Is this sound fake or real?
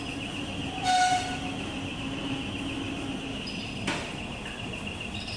real